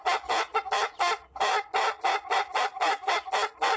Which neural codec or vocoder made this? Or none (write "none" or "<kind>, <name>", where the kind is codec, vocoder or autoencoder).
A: none